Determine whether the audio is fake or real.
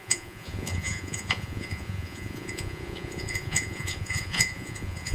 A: fake